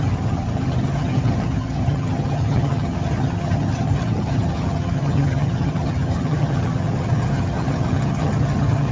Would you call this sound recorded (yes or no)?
no